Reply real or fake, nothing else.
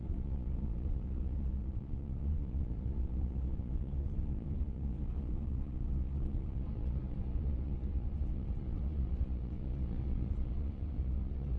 fake